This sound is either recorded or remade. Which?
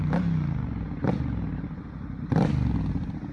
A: recorded